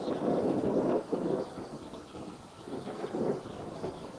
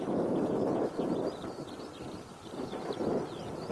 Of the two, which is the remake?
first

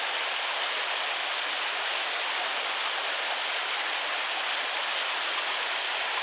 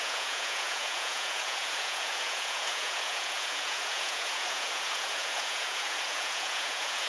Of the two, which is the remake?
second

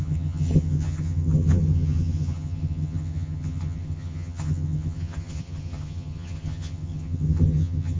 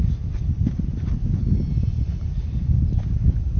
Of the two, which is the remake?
first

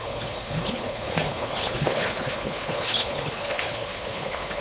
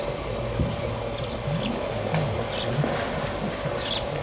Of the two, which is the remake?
first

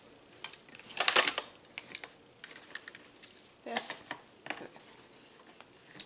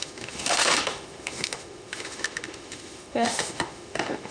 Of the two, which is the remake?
second